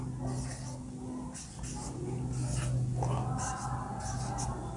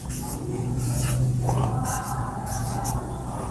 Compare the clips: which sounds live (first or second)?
first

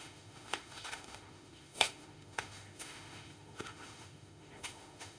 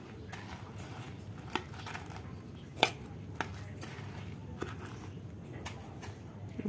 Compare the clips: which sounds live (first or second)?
second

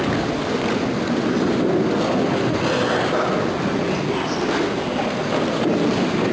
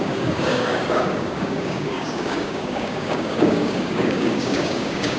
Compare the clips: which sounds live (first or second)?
first